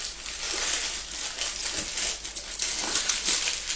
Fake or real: real